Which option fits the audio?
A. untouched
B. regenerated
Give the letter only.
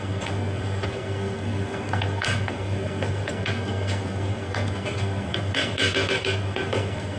B